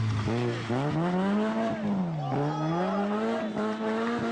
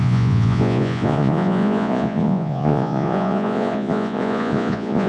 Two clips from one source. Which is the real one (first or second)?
first